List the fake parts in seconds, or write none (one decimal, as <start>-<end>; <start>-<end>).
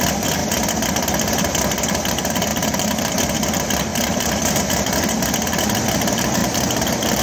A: 2.5-3.1; 3.9-4.6; 6.4-7.2